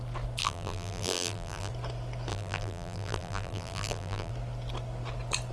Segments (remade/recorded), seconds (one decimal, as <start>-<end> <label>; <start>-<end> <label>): 0.0-0.4 recorded; 0.4-1.7 remade; 1.7-2.3 recorded; 2.3-4.3 remade; 4.3-5.5 recorded